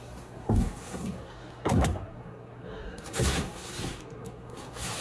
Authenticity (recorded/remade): remade